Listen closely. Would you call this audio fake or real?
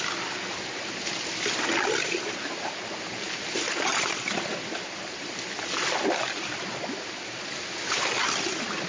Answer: real